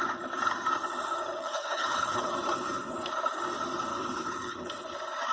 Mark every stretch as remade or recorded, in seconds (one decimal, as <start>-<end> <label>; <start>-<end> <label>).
0.0-1.3 recorded; 1.3-2.3 remade; 2.3-3.9 recorded; 3.9-4.7 remade; 4.7-5.3 recorded